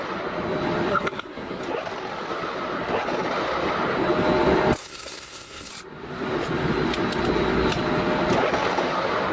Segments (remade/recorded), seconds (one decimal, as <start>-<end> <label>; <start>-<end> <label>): 0.0-0.9 recorded; 0.9-1.6 remade; 1.6-4.8 recorded; 4.8-5.7 remade; 5.7-9.3 recorded